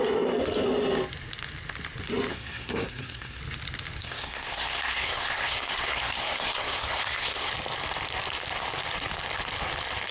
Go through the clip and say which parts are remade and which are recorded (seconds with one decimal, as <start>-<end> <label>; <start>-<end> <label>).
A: 0.0-2.3 recorded; 2.3-3.4 remade; 3.4-4.0 recorded; 4.0-7.5 remade; 7.5-10.1 recorded